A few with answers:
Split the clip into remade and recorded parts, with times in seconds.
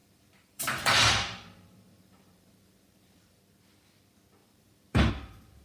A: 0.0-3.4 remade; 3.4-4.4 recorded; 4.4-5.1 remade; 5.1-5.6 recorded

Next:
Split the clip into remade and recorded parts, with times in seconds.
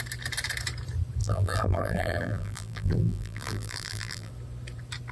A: 0.0-1.2 recorded; 1.2-4.3 remade; 4.3-5.1 recorded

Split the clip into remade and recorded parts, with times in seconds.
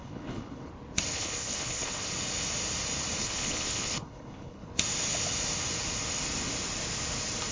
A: 0.0-0.7 remade; 0.7-1.1 recorded; 1.1-2.1 remade; 2.1-3.2 recorded; 3.2-4.7 remade; 4.7-7.5 recorded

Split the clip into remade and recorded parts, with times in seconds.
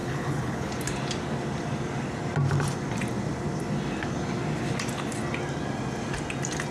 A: 0.0-0.7 remade; 0.7-6.7 recorded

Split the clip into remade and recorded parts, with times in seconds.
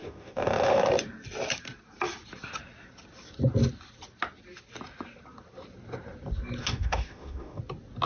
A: 0.0-0.9 remade; 0.9-6.6 recorded; 6.6-7.6 remade; 7.6-8.1 recorded